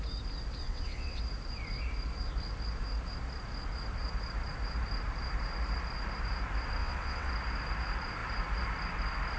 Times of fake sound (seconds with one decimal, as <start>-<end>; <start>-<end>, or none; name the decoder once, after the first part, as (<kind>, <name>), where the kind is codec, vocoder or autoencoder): 0.6-1.2 (vocoder, WaveNeXt); 6.8-7.3